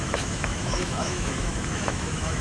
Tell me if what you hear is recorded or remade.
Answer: remade